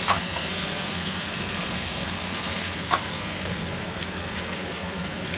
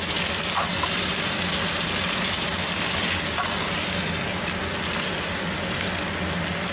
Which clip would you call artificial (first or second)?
first